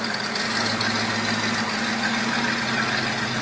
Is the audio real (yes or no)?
yes